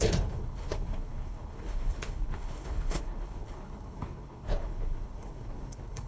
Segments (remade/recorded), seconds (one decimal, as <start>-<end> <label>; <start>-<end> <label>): 0.0-6.1 remade